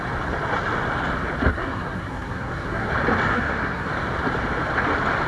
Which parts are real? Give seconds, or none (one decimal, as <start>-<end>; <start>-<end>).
0.0-1.5; 2.9-3.3; 3.9-5.3